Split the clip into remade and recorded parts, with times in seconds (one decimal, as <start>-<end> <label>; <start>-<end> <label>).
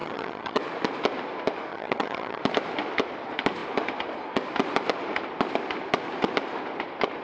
0.0-0.6 remade; 0.6-1.7 recorded; 1.7-2.4 remade; 2.4-7.2 recorded